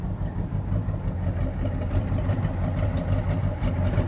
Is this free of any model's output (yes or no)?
yes